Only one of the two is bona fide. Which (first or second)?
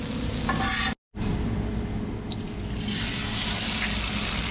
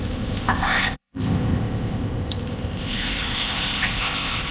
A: first